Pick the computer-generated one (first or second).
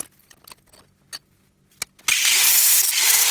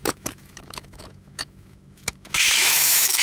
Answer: second